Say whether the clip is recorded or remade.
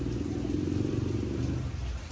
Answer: recorded